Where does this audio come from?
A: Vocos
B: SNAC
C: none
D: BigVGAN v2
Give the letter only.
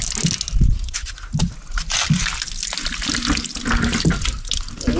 C